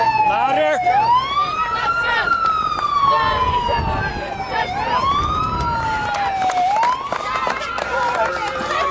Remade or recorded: recorded